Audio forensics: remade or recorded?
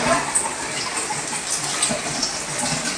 recorded